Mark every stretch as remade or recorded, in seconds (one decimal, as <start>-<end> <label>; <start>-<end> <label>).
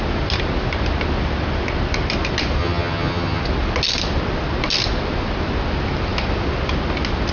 0.0-2.6 recorded; 2.6-3.4 remade; 3.4-7.3 recorded